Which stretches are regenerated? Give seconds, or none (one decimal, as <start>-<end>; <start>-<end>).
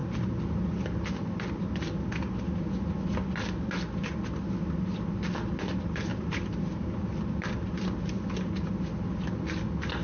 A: 6.1-7.0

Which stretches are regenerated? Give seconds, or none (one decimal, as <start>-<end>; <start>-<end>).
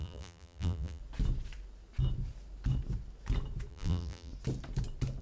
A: 0.0-1.0; 3.7-4.3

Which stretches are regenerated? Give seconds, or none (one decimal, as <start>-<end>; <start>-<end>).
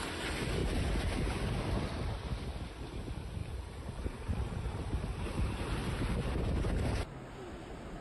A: 3.4-6.0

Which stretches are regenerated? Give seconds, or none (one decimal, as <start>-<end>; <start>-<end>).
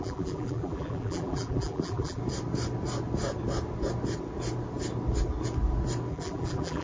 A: 0.0-2.2; 6.1-6.8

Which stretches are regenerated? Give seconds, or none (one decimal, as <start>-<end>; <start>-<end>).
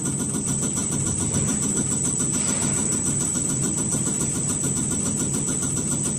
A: 0.8-1.3; 2.8-4.7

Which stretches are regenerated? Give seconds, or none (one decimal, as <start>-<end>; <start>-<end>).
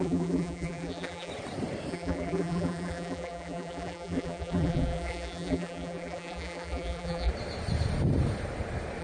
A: 0.0-1.3; 1.9-7.3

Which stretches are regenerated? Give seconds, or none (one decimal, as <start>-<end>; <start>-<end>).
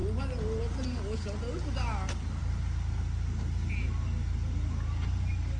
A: none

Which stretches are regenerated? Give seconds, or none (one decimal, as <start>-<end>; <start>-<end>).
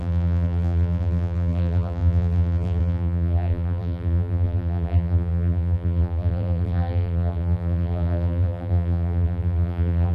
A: 0.0-10.1